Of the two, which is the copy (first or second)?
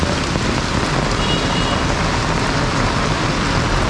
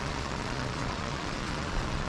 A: second